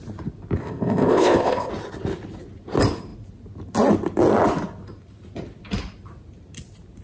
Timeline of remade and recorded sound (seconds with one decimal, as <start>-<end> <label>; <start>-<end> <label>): 0.0-0.6 recorded; 0.6-1.7 remade; 1.7-7.0 recorded